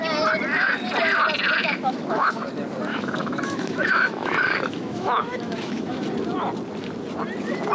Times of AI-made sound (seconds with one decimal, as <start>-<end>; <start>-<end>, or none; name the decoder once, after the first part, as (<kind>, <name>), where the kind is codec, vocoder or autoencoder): 1.6-2.3 (autoencoder, DAC-VAE); 2.9-6.0